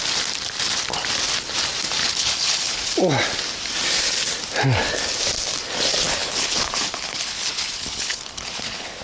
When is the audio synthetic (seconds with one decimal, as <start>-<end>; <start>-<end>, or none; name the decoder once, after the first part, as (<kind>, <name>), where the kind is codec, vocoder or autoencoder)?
2.0-2.8 (codec, HILCodec); 6.2-9.0